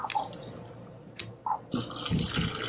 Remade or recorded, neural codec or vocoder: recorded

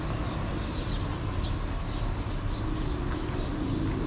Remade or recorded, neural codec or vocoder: recorded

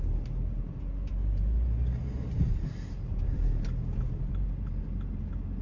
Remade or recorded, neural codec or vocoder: remade, vocoder, BigVGAN v2